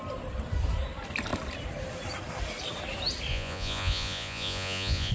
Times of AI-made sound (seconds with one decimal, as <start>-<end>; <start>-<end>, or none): 3.3-5.1

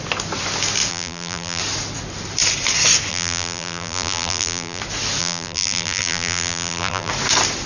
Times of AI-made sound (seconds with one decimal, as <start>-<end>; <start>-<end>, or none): 0.9-1.6; 3.1-4.8; 5.2-7.1